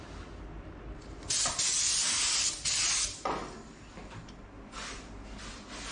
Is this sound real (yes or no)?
yes